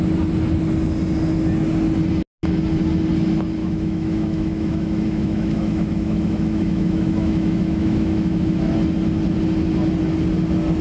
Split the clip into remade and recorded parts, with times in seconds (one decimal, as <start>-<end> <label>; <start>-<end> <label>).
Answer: 0.0-3.6 recorded; 3.6-8.7 remade; 8.7-10.8 recorded

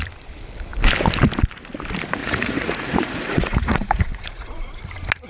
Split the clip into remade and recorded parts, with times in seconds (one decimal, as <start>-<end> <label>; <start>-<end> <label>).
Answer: 0.0-2.2 recorded; 2.2-4.8 remade; 4.8-5.3 recorded

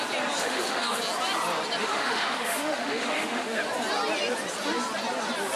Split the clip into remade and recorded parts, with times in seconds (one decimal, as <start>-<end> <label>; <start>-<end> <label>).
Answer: 0.0-0.4 recorded; 0.4-1.0 remade; 1.0-1.8 recorded; 1.8-3.6 remade; 3.6-5.6 recorded